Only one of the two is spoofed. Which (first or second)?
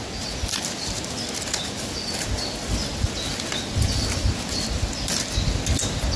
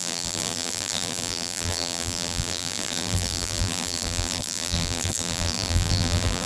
second